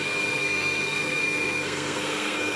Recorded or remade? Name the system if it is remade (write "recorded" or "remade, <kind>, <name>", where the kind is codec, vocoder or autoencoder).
remade, codec, SNAC